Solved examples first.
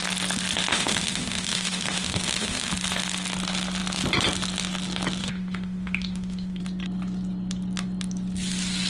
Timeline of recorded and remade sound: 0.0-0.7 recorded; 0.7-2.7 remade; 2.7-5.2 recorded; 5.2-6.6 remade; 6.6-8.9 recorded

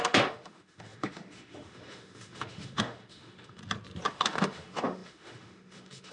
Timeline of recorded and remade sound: 0.0-3.6 remade; 3.6-4.1 recorded; 4.1-6.1 remade

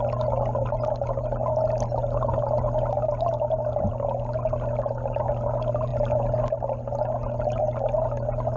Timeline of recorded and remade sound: 0.0-8.6 recorded